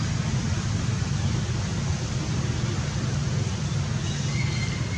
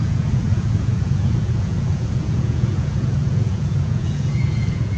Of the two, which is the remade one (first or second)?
second